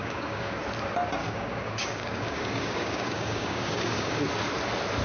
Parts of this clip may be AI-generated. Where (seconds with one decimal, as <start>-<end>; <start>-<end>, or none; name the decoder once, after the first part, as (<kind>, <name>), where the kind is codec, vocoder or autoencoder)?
0.0-0.6 (codec, DAC); 1.2-4.2